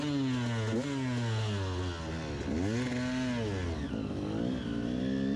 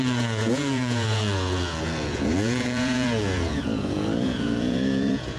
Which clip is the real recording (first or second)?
first